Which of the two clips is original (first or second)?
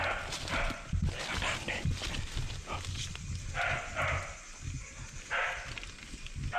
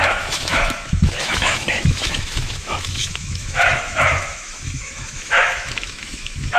first